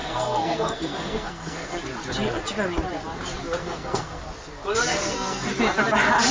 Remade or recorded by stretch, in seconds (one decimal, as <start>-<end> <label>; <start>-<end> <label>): 0.0-1.8 remade; 1.8-3.6 recorded; 3.6-4.2 remade; 4.2-4.9 recorded; 4.9-5.5 remade; 5.5-6.3 recorded